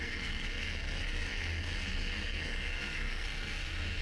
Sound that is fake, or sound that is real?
fake